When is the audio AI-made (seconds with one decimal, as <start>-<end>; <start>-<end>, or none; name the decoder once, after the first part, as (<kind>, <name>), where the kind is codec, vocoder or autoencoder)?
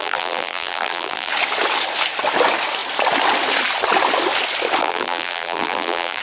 0.0-1.3 (vocoder, BigVGAN v2); 4.8-6.2